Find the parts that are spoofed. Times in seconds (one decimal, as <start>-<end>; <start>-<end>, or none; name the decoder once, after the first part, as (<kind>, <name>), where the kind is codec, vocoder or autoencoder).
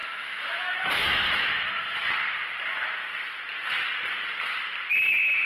0.0-1.6 (autoencoder, DAC-VAE)